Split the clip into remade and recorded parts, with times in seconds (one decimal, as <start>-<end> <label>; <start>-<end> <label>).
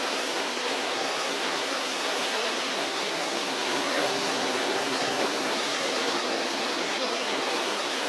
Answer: 0.0-8.1 remade